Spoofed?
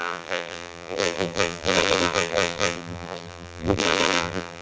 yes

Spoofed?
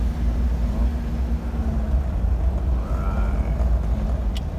no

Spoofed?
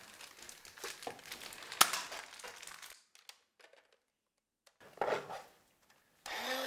no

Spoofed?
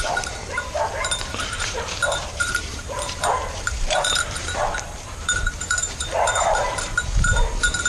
yes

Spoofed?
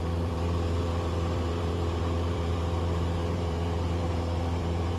yes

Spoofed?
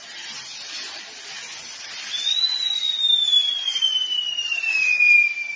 no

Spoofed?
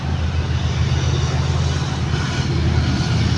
no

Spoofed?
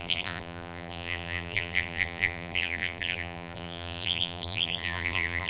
yes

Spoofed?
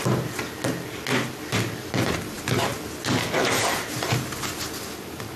no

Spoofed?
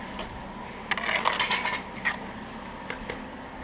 no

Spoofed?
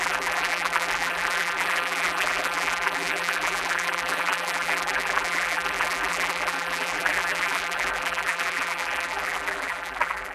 yes